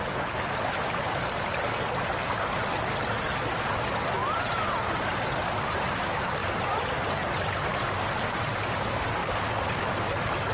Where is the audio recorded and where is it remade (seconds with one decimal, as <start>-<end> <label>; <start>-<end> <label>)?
0.0-4.2 recorded; 4.2-5.0 remade; 5.0-6.4 recorded; 6.4-7.9 remade; 7.9-9.2 recorded; 9.2-9.9 remade; 9.9-10.5 recorded

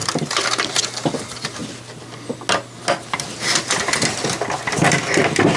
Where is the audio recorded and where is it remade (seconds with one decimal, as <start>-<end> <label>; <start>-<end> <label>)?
0.0-0.8 remade; 0.8-5.6 recorded

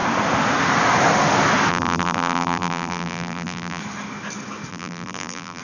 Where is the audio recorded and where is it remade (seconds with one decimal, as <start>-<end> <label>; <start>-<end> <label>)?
0.0-1.7 recorded; 1.7-3.8 remade; 3.8-4.7 recorded; 4.7-5.6 remade

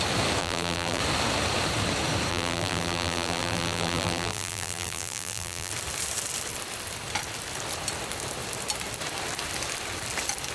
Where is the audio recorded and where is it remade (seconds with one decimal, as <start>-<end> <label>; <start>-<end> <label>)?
0.0-0.4 recorded; 0.4-1.0 remade; 1.0-2.3 recorded; 2.3-5.7 remade; 5.7-10.5 recorded

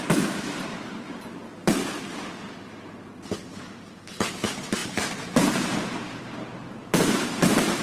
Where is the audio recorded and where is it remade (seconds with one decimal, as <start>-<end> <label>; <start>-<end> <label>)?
0.0-1.4 remade; 1.4-4.3 recorded; 4.3-7.8 remade